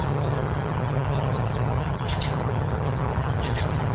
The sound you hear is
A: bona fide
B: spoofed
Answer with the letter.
B